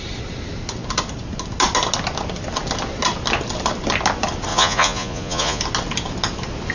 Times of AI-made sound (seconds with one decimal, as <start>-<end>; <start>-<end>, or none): 4.5-5.6